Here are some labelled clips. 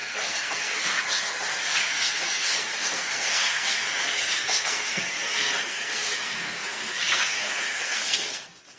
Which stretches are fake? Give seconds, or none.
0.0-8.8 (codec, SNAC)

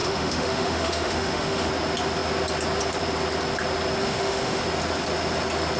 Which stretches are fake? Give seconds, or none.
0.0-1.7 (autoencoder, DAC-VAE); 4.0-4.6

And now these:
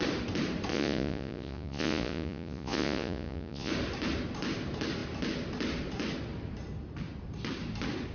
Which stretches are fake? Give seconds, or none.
0.7-3.7 (vocoder, Vocos)